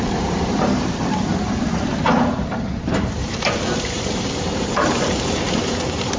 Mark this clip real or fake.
fake